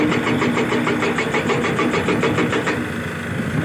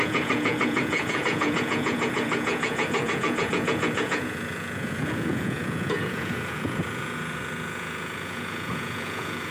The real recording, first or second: first